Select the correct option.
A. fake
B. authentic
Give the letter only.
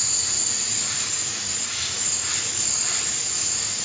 B